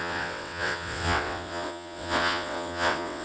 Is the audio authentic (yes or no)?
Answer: no